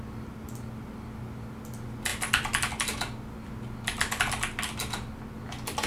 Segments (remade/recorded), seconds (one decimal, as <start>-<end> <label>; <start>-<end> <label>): 0.0-5.9 recorded